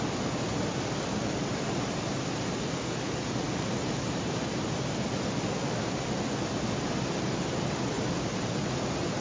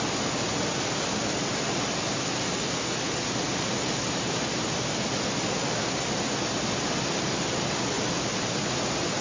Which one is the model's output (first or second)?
first